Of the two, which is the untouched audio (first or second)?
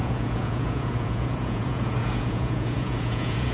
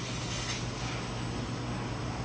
second